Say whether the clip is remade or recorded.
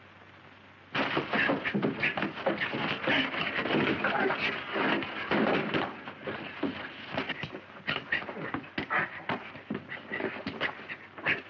recorded